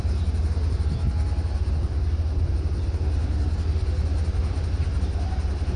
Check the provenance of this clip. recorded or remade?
recorded